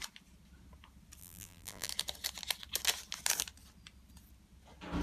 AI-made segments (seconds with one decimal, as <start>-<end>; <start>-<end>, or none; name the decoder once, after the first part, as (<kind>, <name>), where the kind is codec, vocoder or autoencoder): 1.2-1.9 (vocoder, BigVGAN v2)